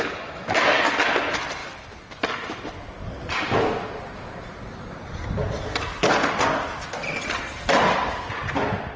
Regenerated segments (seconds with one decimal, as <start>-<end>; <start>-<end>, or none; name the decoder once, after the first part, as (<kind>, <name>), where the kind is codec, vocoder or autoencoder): none